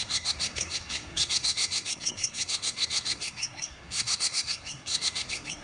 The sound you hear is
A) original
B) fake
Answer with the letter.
B